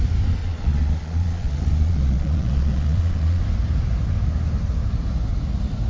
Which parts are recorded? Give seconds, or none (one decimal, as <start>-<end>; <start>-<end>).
0.0-0.4; 3.4-5.9